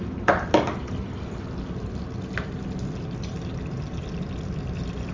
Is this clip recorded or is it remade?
recorded